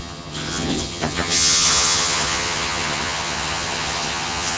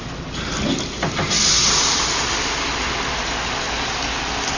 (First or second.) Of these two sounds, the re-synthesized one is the first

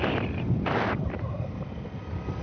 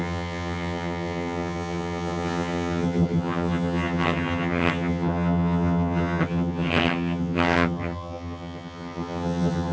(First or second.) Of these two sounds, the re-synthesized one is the second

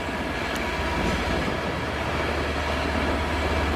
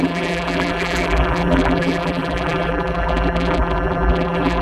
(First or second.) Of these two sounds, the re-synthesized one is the second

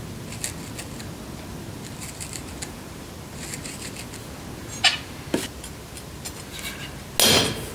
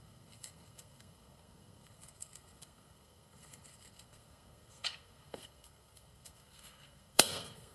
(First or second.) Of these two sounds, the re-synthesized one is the second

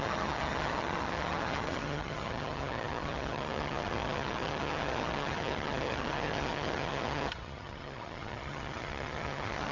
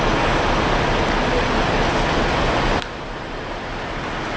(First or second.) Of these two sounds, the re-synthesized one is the first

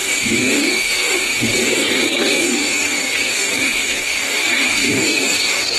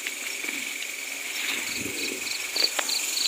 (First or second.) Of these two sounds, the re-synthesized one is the first